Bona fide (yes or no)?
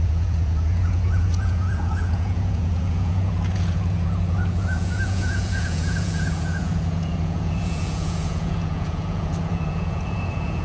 no